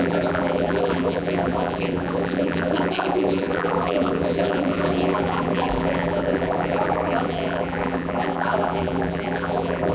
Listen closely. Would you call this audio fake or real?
fake